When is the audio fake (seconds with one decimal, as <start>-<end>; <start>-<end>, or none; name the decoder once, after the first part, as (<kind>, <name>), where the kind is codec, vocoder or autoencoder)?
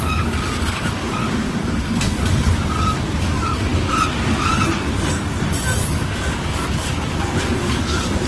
0.0-3.7 (codec, DAC); 5.8-8.3